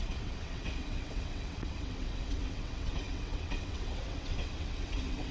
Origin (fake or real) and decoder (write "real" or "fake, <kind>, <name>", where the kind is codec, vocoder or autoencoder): fake, vocoder, WaveNeXt